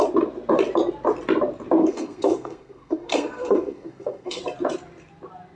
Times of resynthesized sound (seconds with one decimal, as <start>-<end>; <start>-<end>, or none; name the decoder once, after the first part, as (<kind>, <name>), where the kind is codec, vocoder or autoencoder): 1.8-4.4 (codec, SNAC)